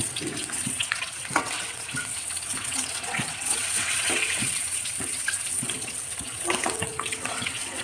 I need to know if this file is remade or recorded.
remade